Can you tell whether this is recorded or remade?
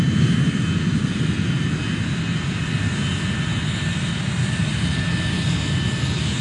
recorded